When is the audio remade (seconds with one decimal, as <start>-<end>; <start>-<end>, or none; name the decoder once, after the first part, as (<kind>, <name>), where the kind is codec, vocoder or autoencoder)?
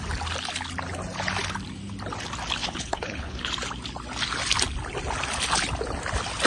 2.6-3.5 (codec, HILCodec)